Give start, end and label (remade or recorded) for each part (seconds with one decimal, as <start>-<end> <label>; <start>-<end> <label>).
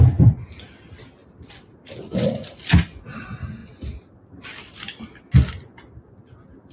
0.0-1.2 recorded; 1.2-2.6 remade; 2.6-3.6 recorded; 3.6-5.2 remade; 5.2-6.7 recorded